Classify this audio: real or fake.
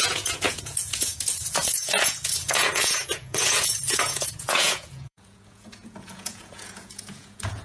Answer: fake